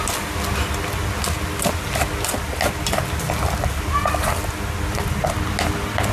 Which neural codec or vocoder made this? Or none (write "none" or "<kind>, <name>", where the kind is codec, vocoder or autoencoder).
none